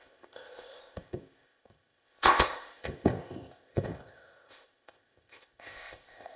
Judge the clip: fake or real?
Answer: fake